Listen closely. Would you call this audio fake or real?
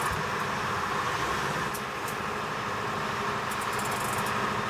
real